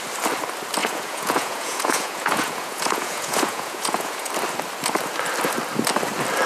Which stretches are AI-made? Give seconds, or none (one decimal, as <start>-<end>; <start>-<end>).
0.8-4.3